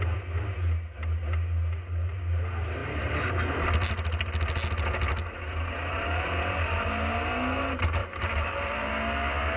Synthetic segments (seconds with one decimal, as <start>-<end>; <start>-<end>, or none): 8.0-8.8